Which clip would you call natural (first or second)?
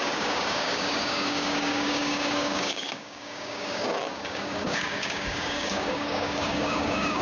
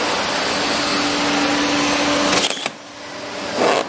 second